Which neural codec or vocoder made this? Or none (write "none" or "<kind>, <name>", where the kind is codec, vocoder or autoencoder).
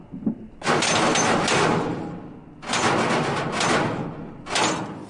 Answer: none